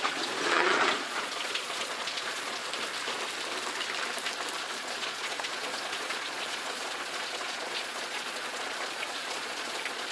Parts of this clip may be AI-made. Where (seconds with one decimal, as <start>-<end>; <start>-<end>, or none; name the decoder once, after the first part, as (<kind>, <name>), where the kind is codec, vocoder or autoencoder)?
0.0-2.6 (vocoder, Vocos); 4.7-10.1